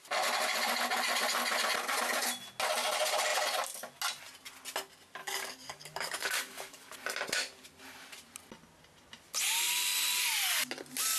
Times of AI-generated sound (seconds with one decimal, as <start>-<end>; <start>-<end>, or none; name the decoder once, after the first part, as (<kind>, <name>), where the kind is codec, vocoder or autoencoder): 5.2-6.9 (codec, DAC)